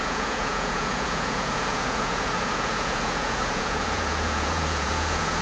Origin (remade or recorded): remade